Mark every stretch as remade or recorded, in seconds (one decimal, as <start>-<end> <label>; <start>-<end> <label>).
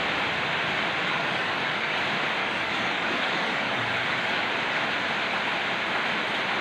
0.0-1.0 recorded; 1.0-2.0 remade; 2.0-2.4 recorded; 2.4-4.4 remade; 4.4-6.6 recorded